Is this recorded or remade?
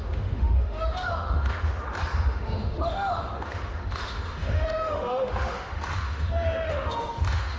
remade